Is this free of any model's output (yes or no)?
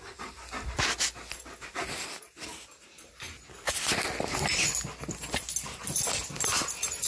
yes